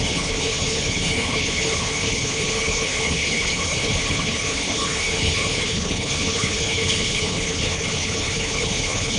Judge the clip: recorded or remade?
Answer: remade